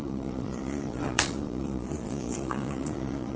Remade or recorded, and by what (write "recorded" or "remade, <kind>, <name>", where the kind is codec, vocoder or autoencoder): remade, vocoder, Vocos